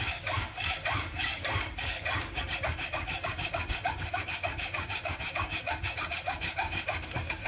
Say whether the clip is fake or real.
fake